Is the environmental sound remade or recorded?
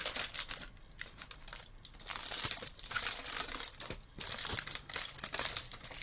recorded